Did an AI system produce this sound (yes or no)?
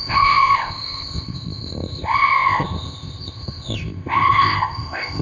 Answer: yes